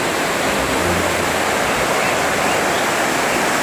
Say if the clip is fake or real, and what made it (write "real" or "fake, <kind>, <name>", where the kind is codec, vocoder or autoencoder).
real